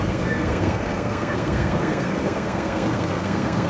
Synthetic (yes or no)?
yes